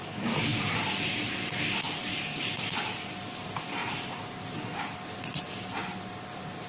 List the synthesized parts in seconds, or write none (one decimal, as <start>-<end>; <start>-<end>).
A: none